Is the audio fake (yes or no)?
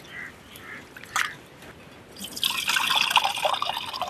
no